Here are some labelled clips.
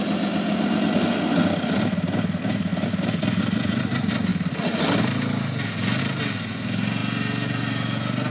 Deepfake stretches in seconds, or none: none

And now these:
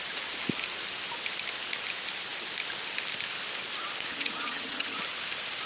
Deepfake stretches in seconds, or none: 4.1-5.0 (vocoder, HiFi-GAN)

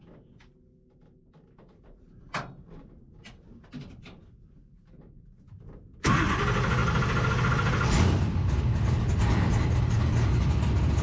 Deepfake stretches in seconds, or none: none

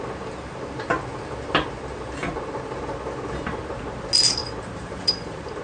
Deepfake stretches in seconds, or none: 4.4-5.6 (vocoder, BigVGAN v2)

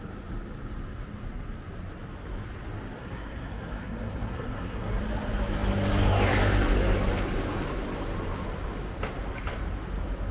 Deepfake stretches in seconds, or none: 3.0-5.0 (codec, SNAC)